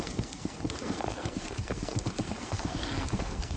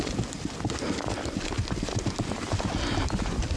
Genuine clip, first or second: second